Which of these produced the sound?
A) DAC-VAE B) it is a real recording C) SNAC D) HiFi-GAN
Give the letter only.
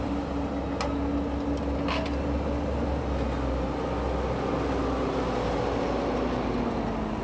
B